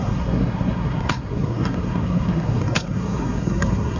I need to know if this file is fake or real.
fake